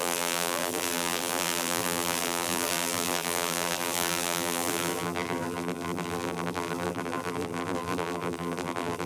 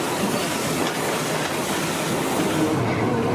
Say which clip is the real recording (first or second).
second